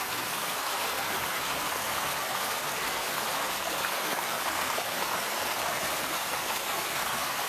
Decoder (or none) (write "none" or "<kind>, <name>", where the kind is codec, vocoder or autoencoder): codec, SNAC